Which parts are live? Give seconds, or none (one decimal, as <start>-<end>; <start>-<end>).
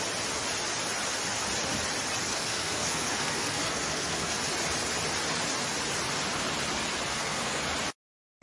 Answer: 0.0-2.3; 4.4-7.1; 7.6-8.4